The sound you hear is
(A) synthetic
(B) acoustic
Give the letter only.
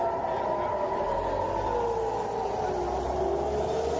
B